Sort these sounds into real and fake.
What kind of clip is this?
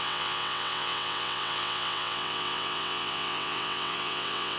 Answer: fake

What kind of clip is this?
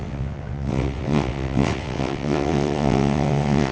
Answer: fake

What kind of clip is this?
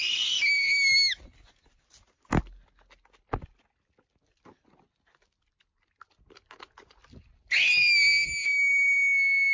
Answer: real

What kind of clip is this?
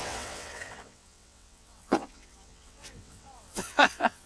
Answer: fake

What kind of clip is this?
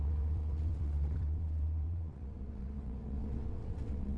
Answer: fake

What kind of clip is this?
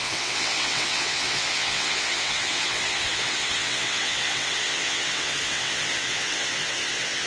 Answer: fake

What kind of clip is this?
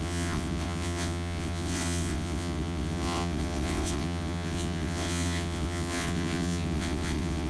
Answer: fake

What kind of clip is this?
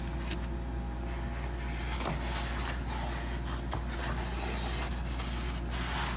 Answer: real